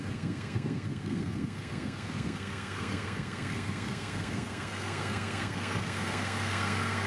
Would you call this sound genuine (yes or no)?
no